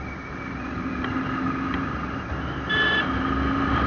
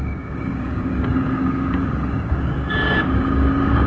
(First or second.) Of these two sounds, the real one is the first